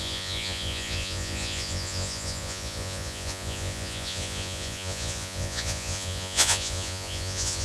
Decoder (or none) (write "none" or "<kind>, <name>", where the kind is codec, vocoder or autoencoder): vocoder, Vocos